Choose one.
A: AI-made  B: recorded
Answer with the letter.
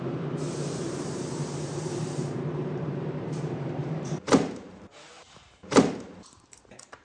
A